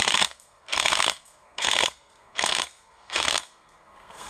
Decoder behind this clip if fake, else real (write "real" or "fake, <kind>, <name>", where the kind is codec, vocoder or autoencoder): fake, codec, SNAC